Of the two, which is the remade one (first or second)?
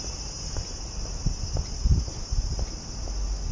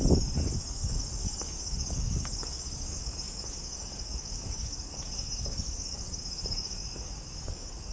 second